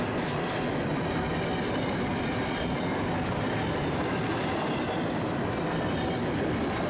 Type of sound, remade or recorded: recorded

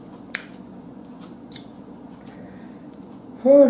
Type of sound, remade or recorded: remade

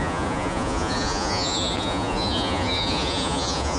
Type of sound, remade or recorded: remade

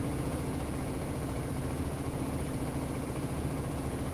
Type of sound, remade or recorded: remade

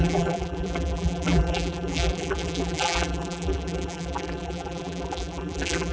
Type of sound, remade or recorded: remade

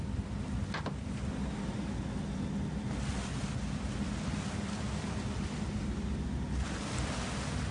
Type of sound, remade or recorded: recorded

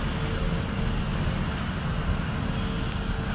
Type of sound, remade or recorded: recorded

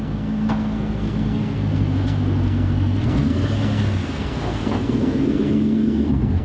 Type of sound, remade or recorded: remade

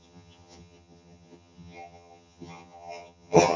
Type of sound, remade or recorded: remade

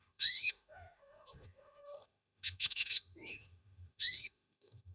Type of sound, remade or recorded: remade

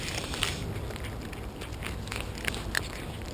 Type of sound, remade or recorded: recorded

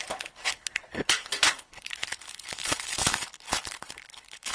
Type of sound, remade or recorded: remade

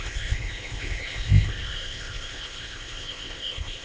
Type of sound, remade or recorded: remade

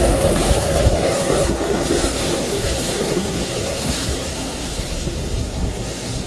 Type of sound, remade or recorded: remade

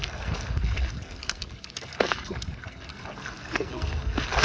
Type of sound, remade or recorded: remade